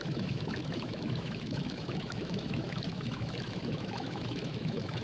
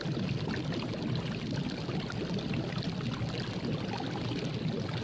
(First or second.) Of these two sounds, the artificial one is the first